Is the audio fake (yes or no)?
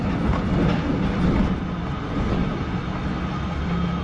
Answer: no